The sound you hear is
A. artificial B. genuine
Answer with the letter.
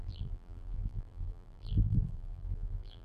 A